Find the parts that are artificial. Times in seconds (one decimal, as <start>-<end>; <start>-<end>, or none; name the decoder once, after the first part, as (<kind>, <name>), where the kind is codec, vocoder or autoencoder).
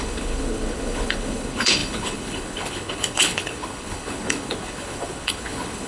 0.0-5.9 (codec, HILCodec)